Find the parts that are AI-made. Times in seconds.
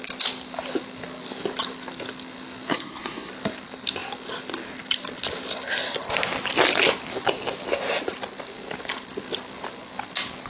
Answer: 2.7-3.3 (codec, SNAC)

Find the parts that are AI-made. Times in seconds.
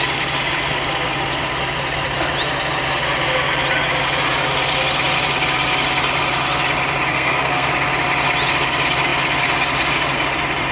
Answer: 7.1-7.7 (codec, SNAC)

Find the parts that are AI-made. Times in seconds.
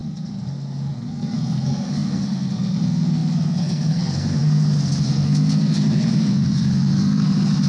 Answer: 0.0-7.7 (codec, SNAC)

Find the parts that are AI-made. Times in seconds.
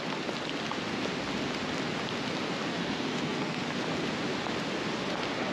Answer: 2.7-3.6 (codec, SNAC)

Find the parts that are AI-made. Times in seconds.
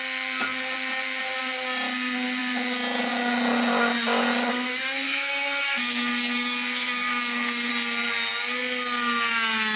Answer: 4.5-7.7 (codec, SNAC)